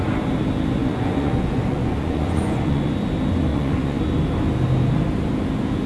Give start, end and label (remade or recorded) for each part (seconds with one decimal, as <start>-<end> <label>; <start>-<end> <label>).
0.0-0.8 recorded; 0.8-2.9 remade; 2.9-3.5 recorded; 3.5-4.0 remade; 4.0-5.9 recorded